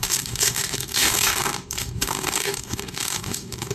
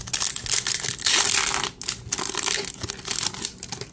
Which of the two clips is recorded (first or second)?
second